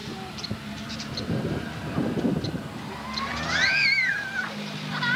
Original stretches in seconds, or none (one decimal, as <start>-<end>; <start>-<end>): 1.8-2.6; 3.3-4.1